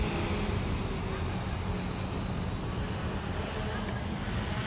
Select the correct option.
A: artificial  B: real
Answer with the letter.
B